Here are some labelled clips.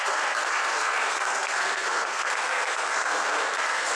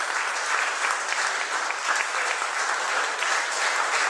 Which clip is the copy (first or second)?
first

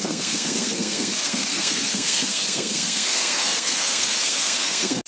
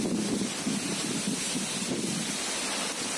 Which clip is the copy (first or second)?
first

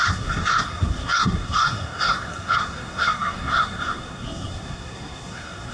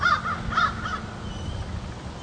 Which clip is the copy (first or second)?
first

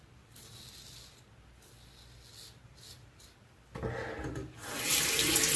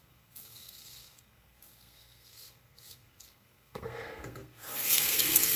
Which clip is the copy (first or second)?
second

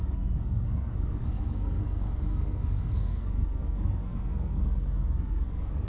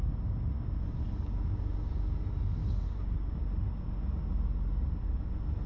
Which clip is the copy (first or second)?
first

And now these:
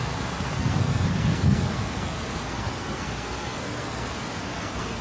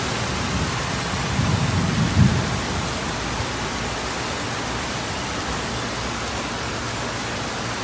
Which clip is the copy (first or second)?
first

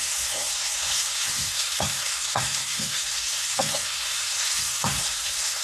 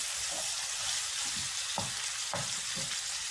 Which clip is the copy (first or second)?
first